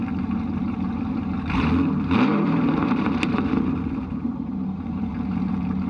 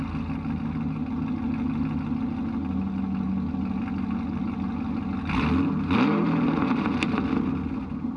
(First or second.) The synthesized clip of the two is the first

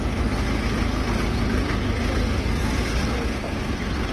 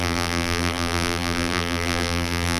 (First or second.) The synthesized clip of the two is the second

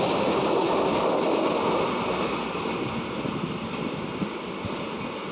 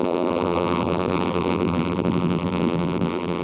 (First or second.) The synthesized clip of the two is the second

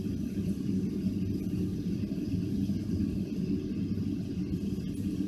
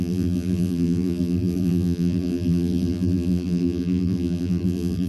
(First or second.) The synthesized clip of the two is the second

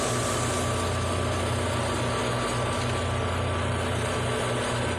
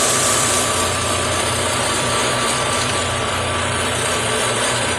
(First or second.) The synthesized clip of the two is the second